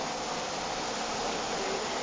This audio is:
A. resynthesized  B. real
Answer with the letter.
B